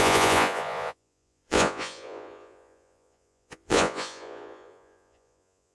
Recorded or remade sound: remade